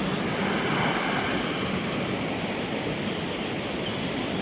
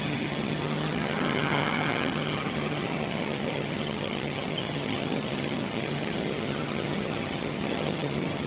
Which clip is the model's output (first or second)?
second